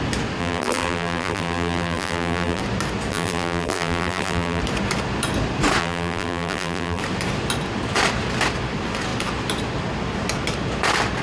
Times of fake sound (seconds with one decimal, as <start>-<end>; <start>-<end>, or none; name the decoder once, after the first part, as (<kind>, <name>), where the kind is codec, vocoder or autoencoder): 0.4-2.6 (vocoder, BigVGAN v2); 3.1-4.6; 5.8-7.0